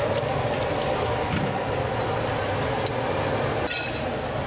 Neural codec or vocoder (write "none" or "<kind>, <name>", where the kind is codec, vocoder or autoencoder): none